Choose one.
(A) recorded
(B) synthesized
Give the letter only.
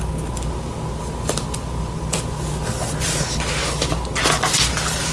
A